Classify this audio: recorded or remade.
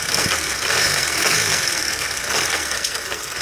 remade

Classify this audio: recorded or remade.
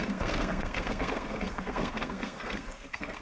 remade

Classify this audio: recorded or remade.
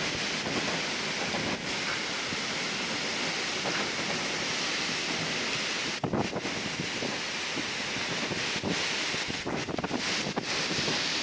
recorded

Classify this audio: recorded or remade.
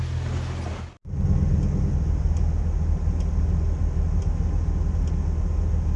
recorded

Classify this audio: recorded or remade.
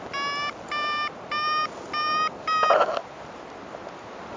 recorded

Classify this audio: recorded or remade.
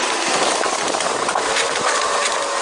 recorded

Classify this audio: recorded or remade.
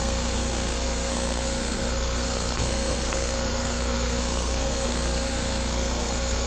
remade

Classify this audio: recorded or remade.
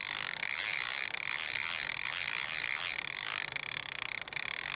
recorded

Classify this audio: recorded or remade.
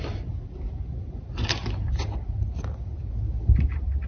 recorded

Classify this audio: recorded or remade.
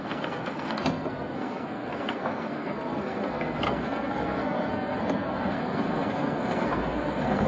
remade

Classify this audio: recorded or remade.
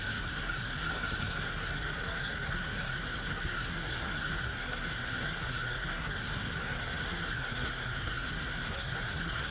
remade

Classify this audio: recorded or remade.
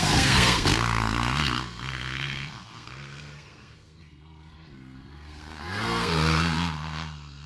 remade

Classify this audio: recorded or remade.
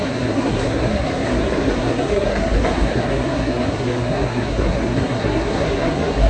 remade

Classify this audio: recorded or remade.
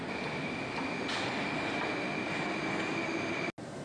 recorded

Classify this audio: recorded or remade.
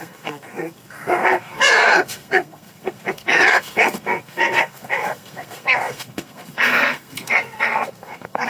remade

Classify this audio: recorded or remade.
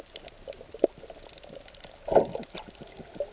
recorded